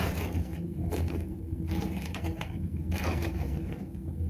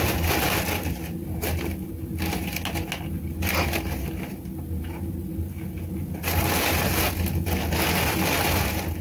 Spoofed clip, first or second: first